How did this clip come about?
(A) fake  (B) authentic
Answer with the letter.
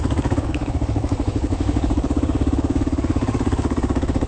A